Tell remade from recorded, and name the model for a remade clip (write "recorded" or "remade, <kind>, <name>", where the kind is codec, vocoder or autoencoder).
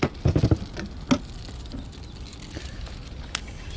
recorded